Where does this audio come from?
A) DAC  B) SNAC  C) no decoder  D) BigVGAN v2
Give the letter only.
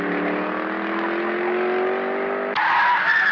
C